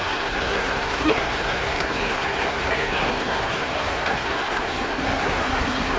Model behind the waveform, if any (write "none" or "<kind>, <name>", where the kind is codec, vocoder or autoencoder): codec, SNAC